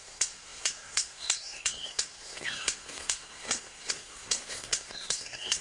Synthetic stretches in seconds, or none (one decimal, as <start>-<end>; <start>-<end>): 0.0-5.6